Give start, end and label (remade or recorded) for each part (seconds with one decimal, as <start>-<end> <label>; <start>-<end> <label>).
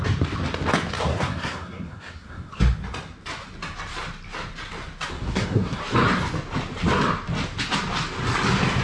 0.0-1.1 recorded; 1.1-2.5 remade; 2.5-5.1 recorded; 5.1-5.8 remade; 5.8-8.8 recorded